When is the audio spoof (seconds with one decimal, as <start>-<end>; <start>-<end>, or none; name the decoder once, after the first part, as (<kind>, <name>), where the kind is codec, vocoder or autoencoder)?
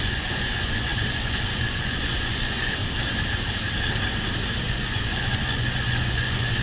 0.0-2.8 (vocoder, Vocos); 4.6-6.6